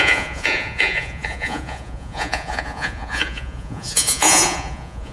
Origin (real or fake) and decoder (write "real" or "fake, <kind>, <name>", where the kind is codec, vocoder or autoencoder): fake, vocoder, Vocos